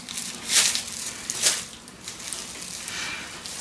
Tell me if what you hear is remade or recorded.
recorded